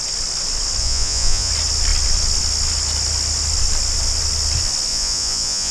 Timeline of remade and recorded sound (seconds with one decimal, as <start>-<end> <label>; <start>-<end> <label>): 0.0-0.8 recorded; 0.8-1.5 remade; 1.5-4.9 recorded; 4.9-5.7 remade